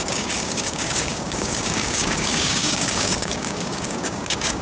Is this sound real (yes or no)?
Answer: no